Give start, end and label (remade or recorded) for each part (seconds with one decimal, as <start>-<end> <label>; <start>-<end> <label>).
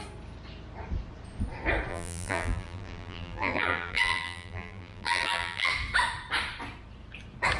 0.0-1.9 recorded; 1.9-5.7 remade; 5.7-7.6 recorded